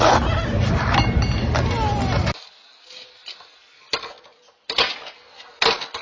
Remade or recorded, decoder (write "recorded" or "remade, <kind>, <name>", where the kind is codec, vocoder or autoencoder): recorded